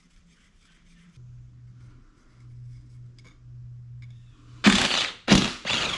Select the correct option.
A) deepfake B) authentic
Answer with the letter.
B